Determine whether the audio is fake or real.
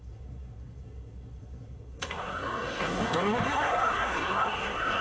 fake